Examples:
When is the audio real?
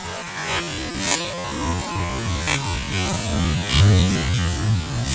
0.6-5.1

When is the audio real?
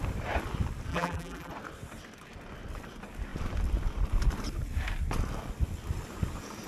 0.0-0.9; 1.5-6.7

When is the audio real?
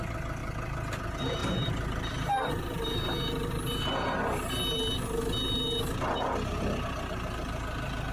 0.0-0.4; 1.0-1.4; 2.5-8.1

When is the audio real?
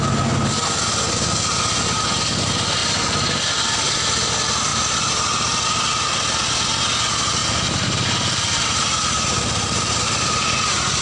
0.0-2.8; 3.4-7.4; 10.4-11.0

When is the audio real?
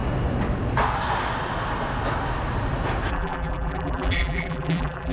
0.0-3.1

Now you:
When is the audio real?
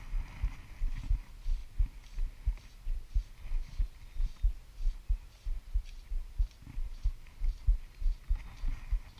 0.0-4.8; 8.4-9.2